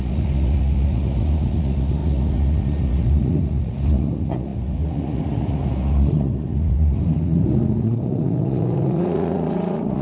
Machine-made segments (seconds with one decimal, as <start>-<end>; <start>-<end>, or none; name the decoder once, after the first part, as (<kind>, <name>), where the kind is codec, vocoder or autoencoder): 0.0-10.0 (vocoder, Vocos)